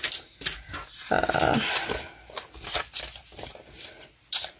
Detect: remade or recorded recorded